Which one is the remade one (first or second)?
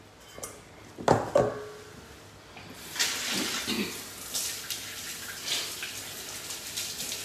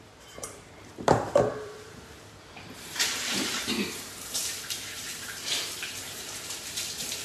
second